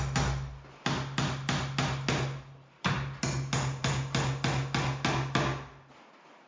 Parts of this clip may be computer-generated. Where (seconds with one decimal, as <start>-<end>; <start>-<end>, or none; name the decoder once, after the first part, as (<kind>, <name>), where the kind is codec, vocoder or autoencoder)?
none